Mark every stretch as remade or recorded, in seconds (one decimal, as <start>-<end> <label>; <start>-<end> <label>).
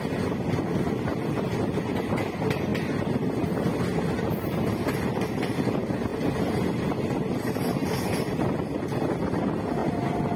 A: 0.0-10.4 recorded